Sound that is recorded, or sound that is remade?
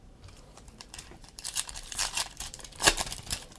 remade